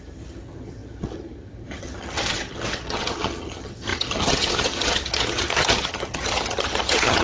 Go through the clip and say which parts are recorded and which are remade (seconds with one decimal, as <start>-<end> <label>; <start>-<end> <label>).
0.0-7.2 remade